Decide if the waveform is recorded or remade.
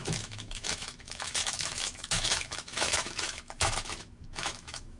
remade